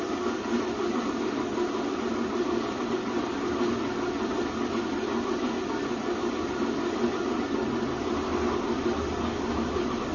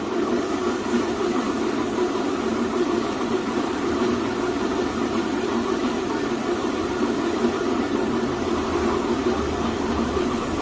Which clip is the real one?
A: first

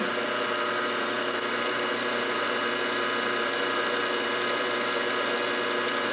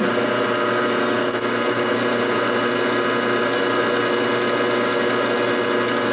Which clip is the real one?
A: second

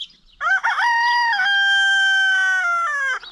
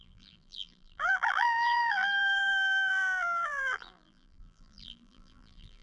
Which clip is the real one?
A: first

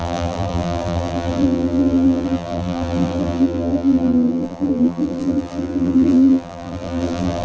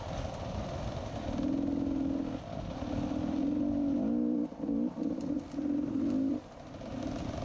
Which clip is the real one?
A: second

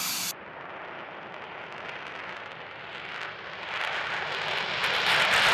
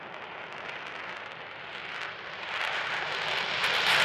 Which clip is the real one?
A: first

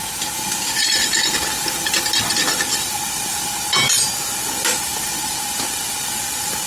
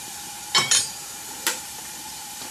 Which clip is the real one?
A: first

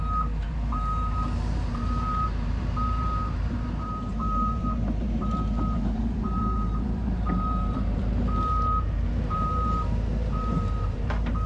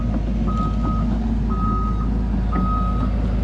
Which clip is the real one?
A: second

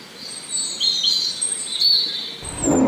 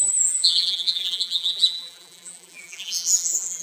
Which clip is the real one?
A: first